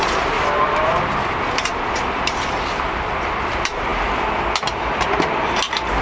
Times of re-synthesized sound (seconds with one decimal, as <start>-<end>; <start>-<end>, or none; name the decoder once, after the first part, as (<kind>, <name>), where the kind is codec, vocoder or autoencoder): 0.0-6.0 (vocoder, BigVGAN v2)